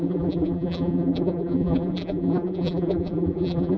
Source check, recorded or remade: remade